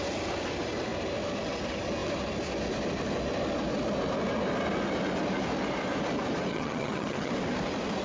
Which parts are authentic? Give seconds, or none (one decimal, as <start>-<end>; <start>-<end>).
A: 0.0-6.5; 7.3-8.0